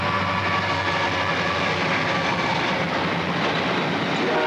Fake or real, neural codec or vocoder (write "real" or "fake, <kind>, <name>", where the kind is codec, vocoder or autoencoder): real